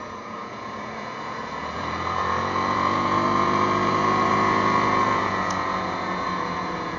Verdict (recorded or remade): remade